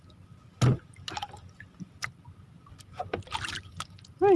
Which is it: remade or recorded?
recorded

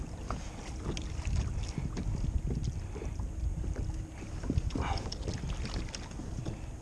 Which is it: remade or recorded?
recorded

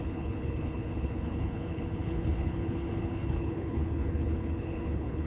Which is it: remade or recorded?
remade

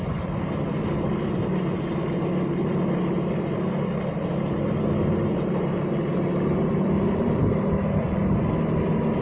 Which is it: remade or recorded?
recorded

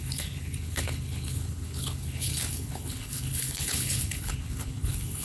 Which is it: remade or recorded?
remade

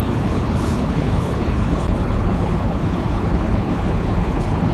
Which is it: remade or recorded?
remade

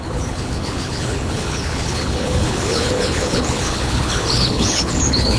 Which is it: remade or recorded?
remade